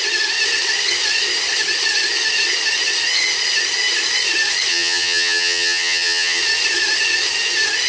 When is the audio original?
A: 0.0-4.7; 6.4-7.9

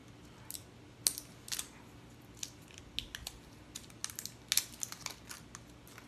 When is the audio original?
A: 0.0-6.1

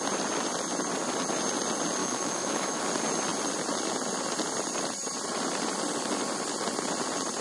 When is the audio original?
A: 0.0-2.0; 2.8-7.4

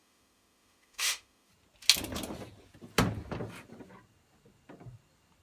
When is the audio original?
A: 1.5-5.4

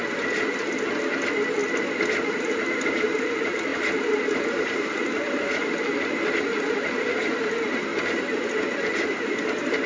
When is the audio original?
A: 0.0-1.6; 2.5-7.9

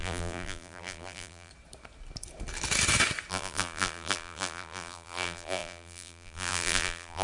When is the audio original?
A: 1.5-3.3

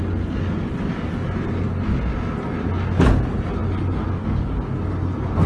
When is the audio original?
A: 0.0-5.5